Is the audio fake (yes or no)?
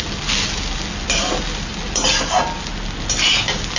no